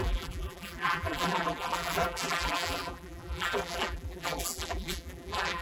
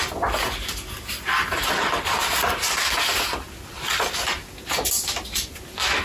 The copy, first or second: first